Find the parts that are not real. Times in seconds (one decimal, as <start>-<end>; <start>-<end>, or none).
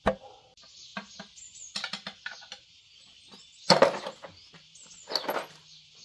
none